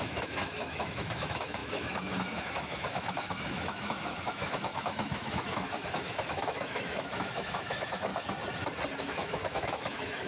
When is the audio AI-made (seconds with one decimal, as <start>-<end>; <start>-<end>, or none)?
0.0-8.1; 9.0-10.3